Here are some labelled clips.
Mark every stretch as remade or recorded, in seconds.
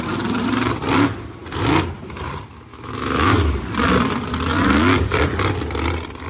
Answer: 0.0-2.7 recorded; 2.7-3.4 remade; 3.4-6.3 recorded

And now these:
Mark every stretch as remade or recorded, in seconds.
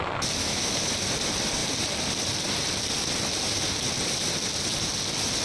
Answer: 0.0-0.4 recorded; 0.4-0.9 remade; 0.9-5.4 recorded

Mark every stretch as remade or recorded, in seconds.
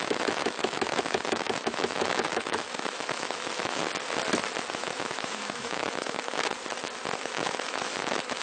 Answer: 0.0-3.8 remade; 3.8-4.7 recorded; 4.7-6.5 remade; 6.5-7.2 recorded; 7.2-8.4 remade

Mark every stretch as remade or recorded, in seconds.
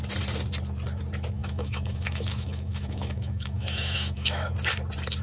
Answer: 0.0-1.4 recorded; 1.4-4.5 remade; 4.5-5.2 recorded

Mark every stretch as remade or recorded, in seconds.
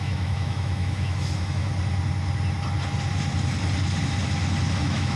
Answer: 0.0-1.7 remade; 1.7-4.8 recorded; 4.8-5.2 remade